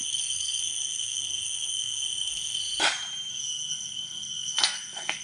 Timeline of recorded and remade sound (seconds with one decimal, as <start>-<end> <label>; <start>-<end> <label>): 0.0-2.6 remade; 2.6-3.3 recorded; 3.3-5.2 remade